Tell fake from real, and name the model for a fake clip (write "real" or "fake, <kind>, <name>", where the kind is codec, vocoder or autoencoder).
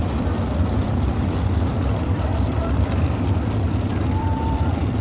fake, vocoder, BigVGAN v2